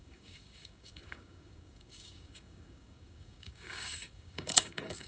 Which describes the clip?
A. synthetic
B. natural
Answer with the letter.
A